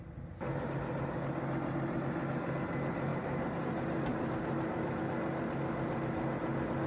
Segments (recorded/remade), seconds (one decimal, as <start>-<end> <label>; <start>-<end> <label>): 0.0-3.1 recorded; 3.1-3.6 remade; 3.6-4.1 recorded; 4.1-5.0 remade; 5.0-6.9 recorded